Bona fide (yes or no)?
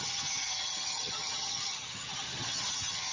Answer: no